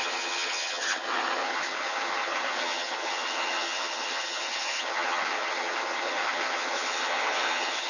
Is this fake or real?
fake